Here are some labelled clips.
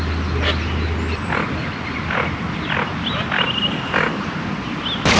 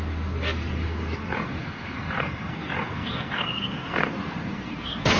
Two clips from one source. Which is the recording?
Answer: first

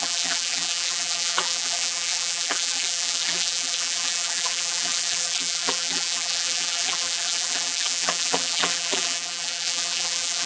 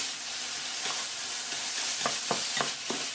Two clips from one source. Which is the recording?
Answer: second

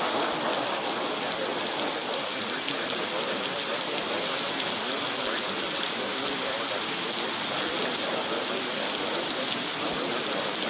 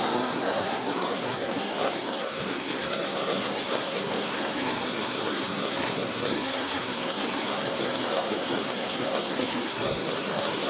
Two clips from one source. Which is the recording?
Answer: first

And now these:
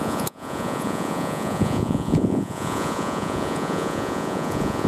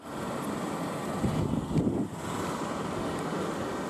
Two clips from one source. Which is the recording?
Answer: second